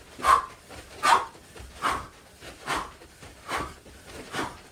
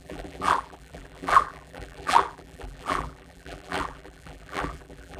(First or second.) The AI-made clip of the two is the second